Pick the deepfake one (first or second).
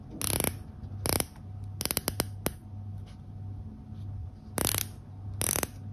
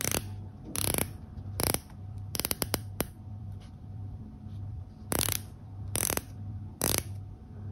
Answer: second